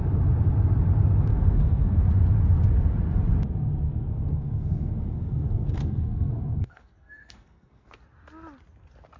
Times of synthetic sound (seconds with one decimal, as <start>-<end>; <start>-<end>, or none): 1.3-2.0; 3.9-8.0